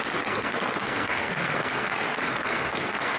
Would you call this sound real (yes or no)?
no